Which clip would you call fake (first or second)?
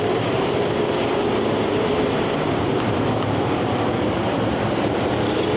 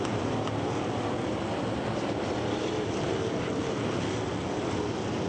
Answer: first